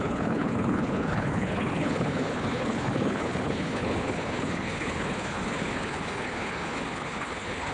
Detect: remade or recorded remade